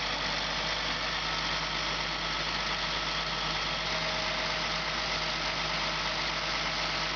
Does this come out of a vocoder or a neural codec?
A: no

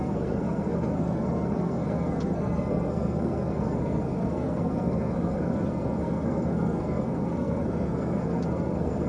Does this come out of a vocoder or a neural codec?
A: yes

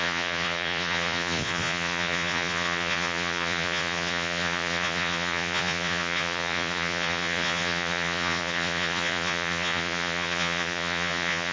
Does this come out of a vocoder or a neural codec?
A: yes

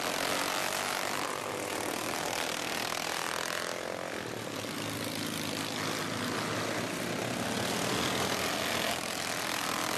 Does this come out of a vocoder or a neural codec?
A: no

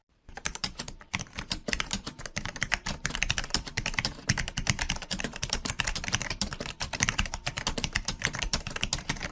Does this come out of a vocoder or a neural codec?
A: yes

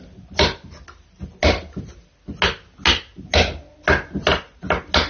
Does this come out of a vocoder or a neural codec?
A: no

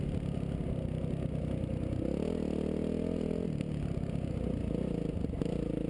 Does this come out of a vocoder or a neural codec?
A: no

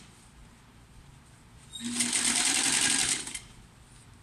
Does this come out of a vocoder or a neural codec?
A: no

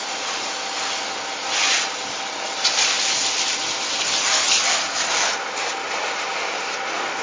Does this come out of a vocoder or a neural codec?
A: no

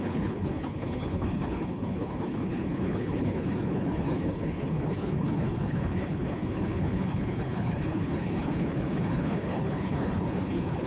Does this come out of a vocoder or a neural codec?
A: yes